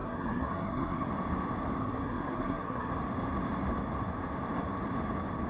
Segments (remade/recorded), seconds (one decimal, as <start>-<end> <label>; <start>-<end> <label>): 0.0-1.1 remade; 1.1-1.8 recorded; 1.8-2.9 remade; 2.9-5.5 recorded